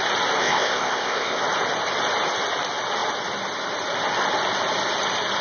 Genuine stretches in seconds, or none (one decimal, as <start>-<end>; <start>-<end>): 0.0-0.4; 1.4-5.4